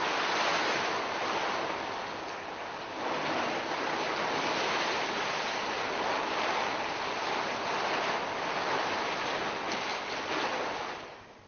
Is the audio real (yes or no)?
yes